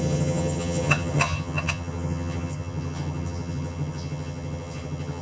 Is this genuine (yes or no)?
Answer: no